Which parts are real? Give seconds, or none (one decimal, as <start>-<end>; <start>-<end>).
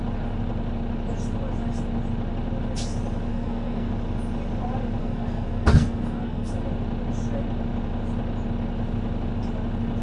0.0-3.3; 3.9-5.0; 6.5-10.0